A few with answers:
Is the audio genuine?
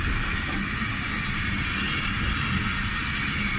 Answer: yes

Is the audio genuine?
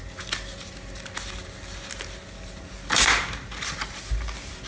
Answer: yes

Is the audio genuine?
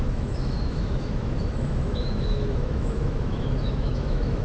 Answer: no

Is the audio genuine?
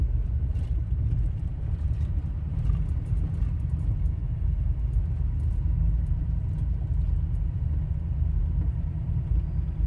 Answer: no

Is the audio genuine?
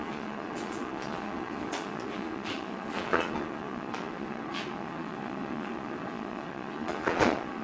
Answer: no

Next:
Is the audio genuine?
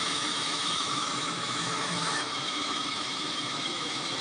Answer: no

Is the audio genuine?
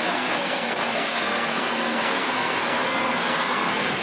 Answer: no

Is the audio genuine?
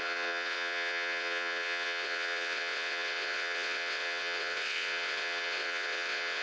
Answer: no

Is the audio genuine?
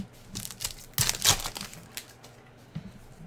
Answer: yes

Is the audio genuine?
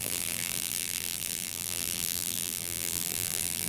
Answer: no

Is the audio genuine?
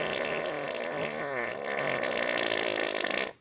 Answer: yes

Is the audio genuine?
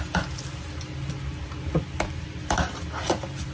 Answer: yes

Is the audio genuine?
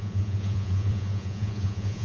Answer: no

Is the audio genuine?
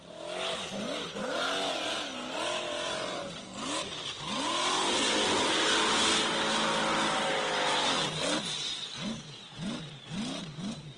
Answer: yes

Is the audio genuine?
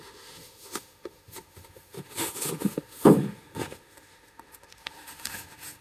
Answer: no